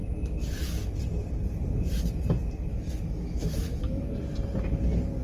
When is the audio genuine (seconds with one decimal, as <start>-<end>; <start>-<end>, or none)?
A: 1.0-2.7; 4.1-5.2